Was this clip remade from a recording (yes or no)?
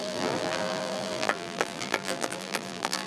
yes